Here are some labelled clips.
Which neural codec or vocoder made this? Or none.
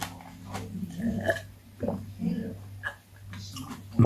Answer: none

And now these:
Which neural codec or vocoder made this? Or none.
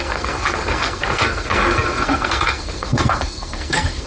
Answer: codec, SNAC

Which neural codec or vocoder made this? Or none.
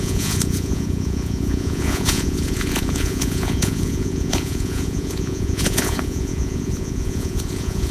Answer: vocoder, Vocos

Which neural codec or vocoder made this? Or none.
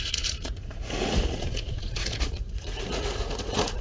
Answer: vocoder, Vocos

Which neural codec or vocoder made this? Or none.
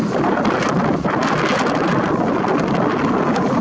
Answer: none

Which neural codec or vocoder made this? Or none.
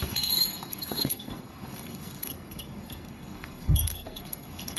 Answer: codec, SNAC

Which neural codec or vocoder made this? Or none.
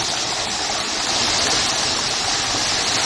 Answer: vocoder, BigVGAN v2